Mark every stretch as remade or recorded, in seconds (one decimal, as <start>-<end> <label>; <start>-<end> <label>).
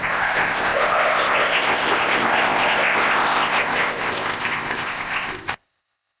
0.0-6.2 remade